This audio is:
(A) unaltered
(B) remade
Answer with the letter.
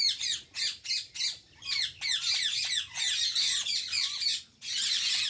A